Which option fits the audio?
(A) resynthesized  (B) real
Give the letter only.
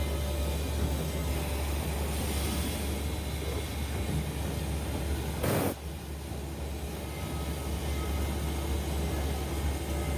B